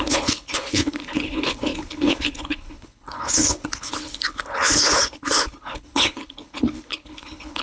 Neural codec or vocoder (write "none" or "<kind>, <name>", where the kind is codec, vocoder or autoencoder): codec, HILCodec